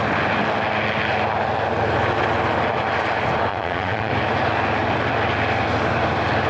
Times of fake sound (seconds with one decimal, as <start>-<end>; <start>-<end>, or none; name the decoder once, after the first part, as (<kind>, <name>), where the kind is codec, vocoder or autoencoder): 3.5-4.1 (vocoder, Vocos)